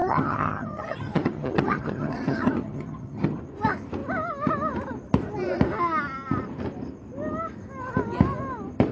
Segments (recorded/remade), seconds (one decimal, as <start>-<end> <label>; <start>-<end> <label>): 0.0-3.4 remade; 3.4-8.9 recorded